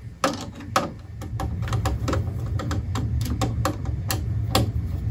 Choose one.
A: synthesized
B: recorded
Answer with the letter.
B